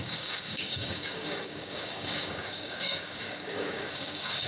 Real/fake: fake